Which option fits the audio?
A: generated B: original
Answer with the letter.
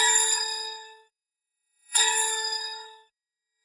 A